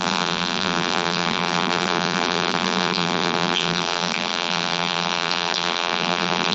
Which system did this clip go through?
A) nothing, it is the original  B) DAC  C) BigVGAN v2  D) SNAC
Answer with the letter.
C